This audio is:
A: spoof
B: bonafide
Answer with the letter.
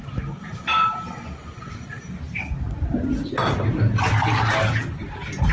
B